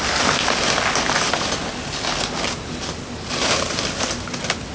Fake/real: real